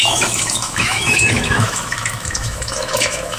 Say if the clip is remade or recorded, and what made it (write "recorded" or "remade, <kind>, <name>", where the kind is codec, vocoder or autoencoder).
remade, autoencoder, DAC-VAE